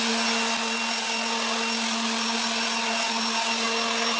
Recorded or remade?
recorded